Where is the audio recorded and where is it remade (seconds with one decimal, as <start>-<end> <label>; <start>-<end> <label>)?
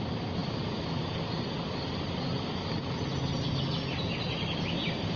0.0-5.2 recorded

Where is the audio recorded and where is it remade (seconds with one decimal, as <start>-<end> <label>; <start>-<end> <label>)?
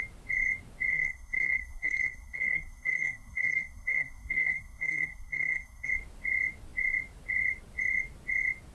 0.0-0.9 recorded; 0.9-5.9 remade; 5.9-8.7 recorded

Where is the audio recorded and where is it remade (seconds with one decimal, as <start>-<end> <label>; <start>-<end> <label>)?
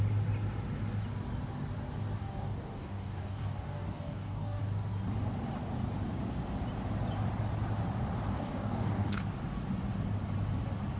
0.0-2.2 recorded; 2.2-4.6 remade; 4.6-8.3 recorded; 8.3-9.2 remade; 9.2-11.0 recorded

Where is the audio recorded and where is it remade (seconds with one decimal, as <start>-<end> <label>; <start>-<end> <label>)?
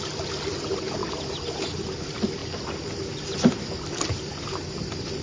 0.0-1.0 recorded; 1.0-1.9 remade; 1.9-5.2 recorded